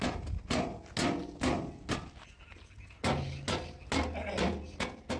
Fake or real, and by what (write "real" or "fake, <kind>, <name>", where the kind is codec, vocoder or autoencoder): real